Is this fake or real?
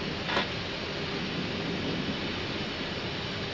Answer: real